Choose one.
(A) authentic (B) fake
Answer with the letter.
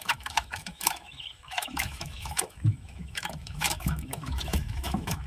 B